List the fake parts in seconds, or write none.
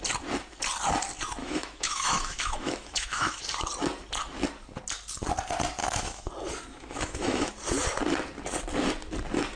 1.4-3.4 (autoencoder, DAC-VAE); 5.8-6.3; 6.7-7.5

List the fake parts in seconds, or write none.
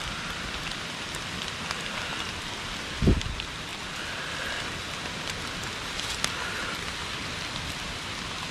none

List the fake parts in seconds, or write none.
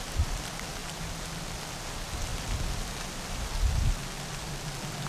0.8-1.6 (vocoder, BigVGAN v2); 4.0-5.1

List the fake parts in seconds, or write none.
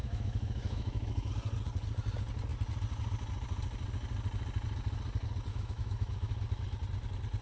0.0-1.3 (autoencoder, DAC-VAE); 5.5-6.3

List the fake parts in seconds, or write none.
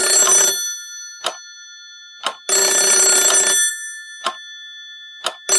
none